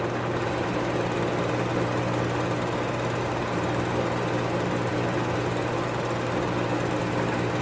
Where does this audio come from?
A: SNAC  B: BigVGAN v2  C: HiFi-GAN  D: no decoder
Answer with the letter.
B